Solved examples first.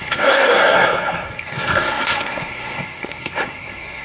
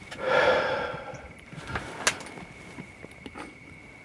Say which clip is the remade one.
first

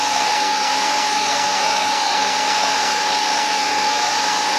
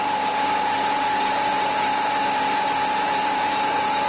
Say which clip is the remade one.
first